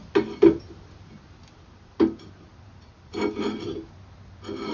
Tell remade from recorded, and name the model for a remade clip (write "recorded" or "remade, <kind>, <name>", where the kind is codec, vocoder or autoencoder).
recorded